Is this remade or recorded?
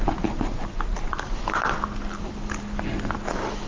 recorded